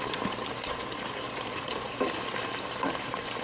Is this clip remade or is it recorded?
remade